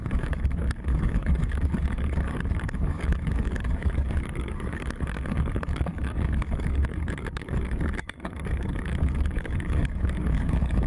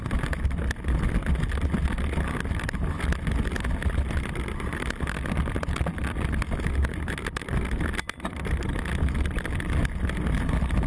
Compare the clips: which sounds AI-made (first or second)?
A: first